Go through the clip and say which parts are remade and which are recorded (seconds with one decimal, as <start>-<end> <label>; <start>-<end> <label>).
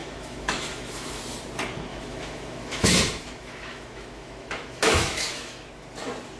0.0-1.2 remade; 1.2-1.9 recorded; 1.9-5.7 remade; 5.7-6.4 recorded